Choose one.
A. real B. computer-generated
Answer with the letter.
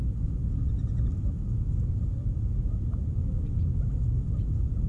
A